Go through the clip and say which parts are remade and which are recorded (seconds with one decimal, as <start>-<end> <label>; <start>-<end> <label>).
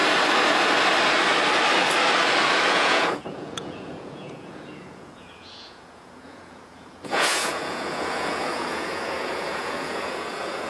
0.0-2.7 recorded; 2.7-10.7 remade